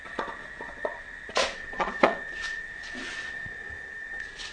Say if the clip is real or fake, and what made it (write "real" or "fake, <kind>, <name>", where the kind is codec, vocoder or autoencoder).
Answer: fake, vocoder, Vocos